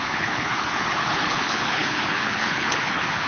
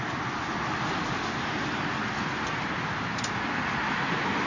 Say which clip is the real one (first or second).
second